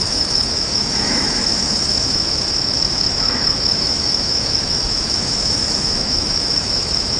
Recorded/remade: remade